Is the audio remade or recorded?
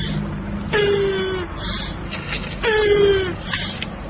recorded